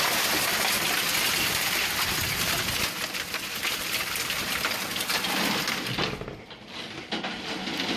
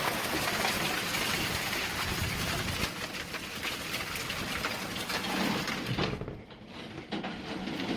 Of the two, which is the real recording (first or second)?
first